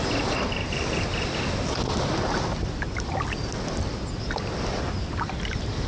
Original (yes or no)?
yes